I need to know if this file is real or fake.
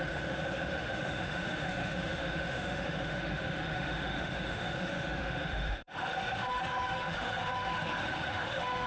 fake